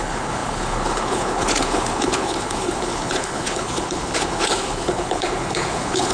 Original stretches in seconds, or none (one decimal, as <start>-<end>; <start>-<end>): none